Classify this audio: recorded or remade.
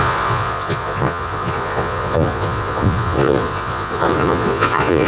remade